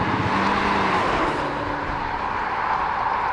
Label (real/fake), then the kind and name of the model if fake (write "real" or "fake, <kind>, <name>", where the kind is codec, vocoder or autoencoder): real